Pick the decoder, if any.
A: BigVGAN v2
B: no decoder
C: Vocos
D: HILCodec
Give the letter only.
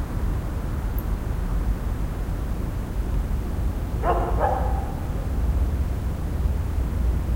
B